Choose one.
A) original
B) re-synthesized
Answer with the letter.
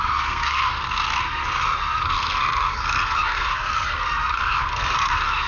B